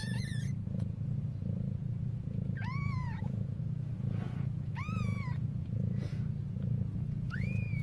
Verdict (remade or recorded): remade